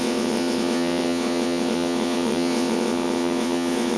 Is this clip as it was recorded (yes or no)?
no